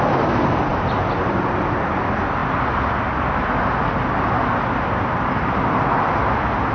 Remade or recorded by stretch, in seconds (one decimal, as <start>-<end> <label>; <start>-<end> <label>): 0.0-6.7 recorded